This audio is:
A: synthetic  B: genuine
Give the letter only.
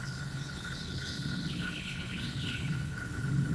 A